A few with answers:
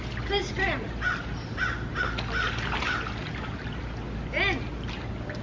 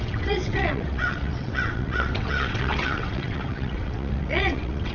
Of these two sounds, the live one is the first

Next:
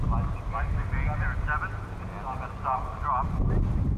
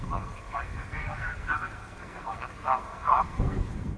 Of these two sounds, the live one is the first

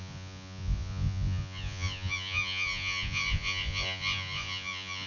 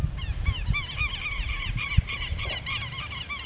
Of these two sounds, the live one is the second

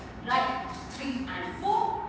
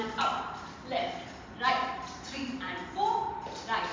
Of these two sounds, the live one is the second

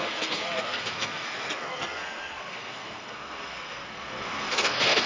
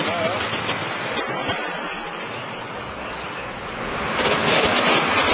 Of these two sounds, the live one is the second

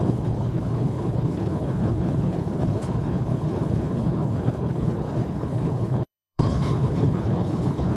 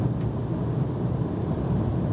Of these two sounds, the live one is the second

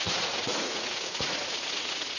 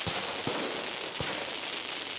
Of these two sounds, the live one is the second